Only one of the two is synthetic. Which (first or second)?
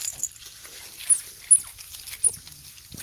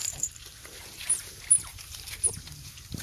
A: second